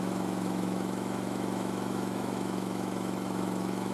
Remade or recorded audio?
remade